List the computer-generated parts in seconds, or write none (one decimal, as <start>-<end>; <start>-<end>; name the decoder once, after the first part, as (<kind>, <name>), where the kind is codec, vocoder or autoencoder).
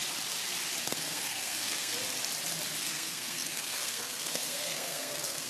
0.8-1.9 (codec, SNAC); 2.8-5.5